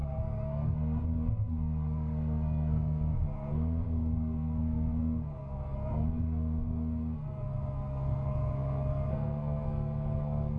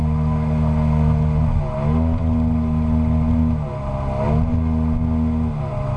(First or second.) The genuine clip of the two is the second